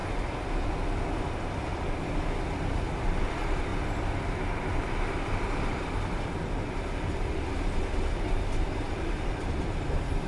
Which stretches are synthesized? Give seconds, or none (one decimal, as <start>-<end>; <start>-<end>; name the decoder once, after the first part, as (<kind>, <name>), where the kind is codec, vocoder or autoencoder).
3.3-3.7 (vocoder, BigVGAN v2); 9.0-10.3